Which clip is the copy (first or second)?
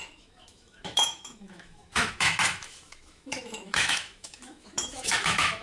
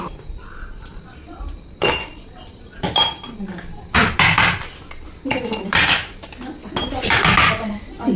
first